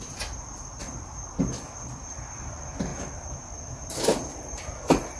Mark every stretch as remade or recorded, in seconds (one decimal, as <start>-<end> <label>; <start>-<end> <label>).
0.0-5.2 recorded